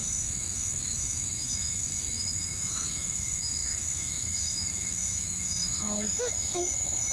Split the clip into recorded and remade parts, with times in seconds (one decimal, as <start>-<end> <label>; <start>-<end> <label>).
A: 0.0-7.1 remade